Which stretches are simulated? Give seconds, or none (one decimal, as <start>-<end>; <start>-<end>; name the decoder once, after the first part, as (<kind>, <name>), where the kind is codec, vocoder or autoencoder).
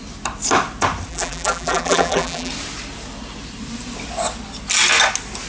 1.1-2.5 (vocoder, BigVGAN v2)